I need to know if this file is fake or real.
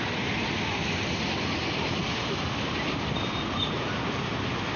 real